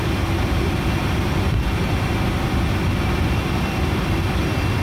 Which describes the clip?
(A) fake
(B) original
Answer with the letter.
A